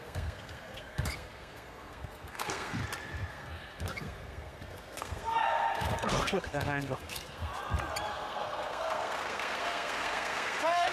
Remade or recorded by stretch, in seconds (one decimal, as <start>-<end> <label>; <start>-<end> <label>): 0.0-2.8 remade; 2.8-3.3 recorded; 3.3-7.5 remade; 7.5-8.1 recorded; 8.1-10.9 remade